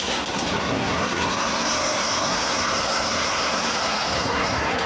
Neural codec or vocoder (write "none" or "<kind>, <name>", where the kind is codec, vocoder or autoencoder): codec, SNAC